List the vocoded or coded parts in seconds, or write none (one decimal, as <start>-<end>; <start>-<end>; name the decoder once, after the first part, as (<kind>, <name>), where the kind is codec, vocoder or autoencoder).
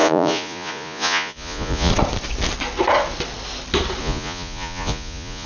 0.0-1.9 (vocoder, Vocos); 4.0-5.5